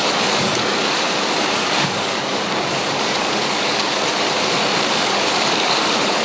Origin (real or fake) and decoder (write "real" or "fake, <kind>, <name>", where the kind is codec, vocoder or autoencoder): fake, codec, DAC